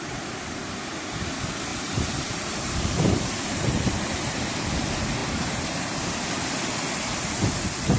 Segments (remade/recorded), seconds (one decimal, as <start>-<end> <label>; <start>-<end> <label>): 0.0-1.7 recorded; 1.7-4.5 remade; 4.5-8.0 recorded